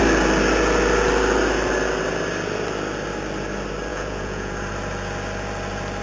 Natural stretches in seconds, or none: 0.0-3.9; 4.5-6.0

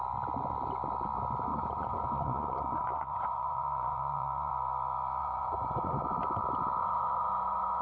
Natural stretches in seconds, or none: 0.0-1.5; 4.5-5.2; 6.0-6.8

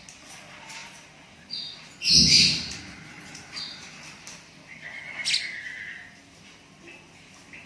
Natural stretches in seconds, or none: 0.0-7.7

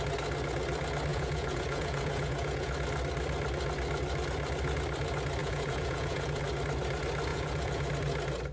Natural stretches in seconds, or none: 0.0-1.1; 2.7-5.4; 6.4-7.3; 7.9-8.5

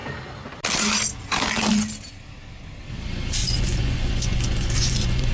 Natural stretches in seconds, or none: 0.0-3.4